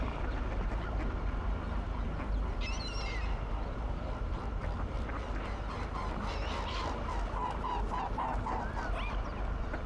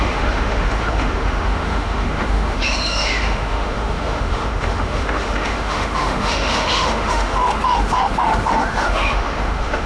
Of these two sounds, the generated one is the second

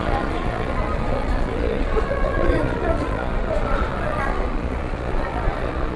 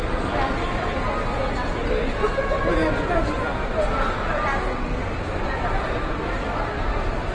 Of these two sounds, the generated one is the first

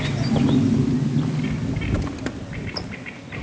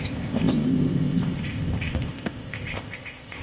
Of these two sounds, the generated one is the second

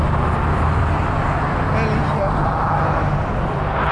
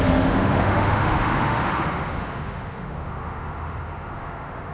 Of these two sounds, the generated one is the second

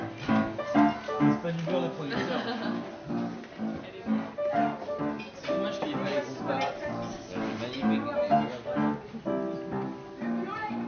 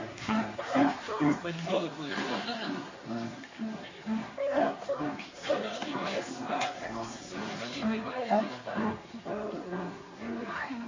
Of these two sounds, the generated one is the second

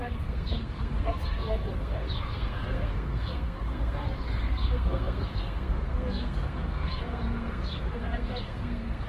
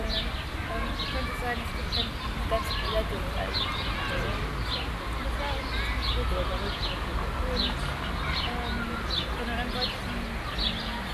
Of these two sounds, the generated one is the first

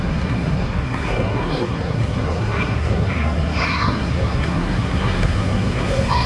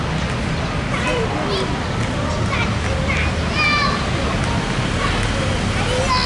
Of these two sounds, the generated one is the first